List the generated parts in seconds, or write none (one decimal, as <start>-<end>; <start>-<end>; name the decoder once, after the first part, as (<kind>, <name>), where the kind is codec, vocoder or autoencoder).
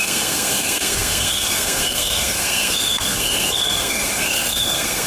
0.0-5.1 (codec, SNAC)